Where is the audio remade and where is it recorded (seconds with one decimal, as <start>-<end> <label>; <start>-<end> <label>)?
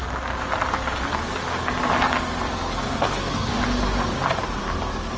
0.0-2.5 recorded; 2.5-3.5 remade; 3.5-5.2 recorded